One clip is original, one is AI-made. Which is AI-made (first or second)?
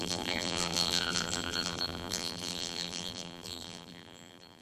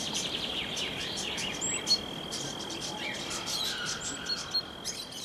first